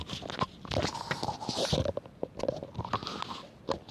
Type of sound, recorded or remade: recorded